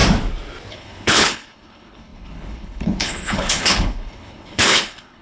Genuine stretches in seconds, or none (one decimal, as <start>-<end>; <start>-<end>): 0.0-0.7